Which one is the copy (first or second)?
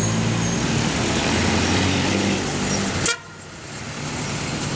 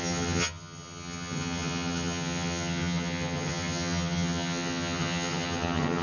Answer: second